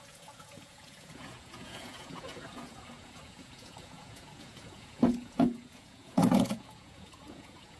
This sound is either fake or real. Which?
fake